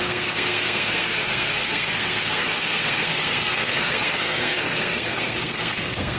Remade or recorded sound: remade